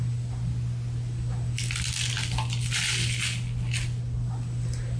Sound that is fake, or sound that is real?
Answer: real